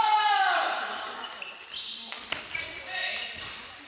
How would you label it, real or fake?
real